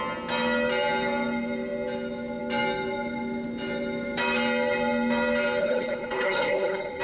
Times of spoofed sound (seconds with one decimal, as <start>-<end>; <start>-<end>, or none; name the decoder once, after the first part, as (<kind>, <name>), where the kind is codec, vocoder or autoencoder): 5.6-7.0 (codec, HILCodec)